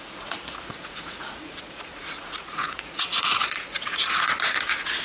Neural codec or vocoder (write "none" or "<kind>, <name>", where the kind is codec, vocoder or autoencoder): vocoder, Vocos